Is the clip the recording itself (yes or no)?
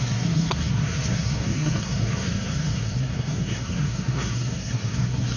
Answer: no